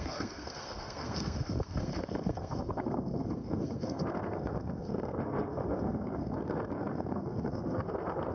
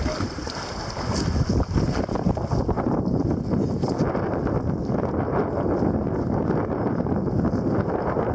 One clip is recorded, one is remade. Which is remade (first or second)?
first